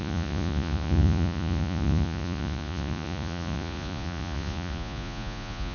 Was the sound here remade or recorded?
remade